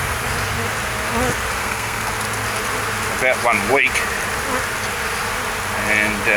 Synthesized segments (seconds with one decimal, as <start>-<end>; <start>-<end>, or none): 1.6-2.1